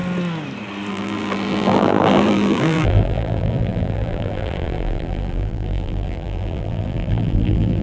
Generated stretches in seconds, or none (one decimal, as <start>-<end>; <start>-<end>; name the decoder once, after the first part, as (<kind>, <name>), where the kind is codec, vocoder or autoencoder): 0.9-7.8 (vocoder, BigVGAN v2)